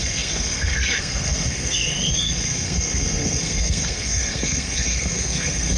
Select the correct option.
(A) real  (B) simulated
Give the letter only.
B